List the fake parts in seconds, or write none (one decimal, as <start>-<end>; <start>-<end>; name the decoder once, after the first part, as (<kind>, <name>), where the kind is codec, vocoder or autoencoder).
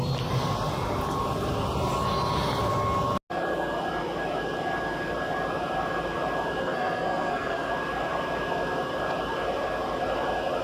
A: 6.6-7.7 (codec, SNAC)